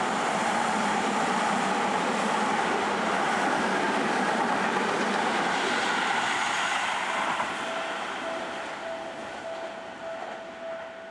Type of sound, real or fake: real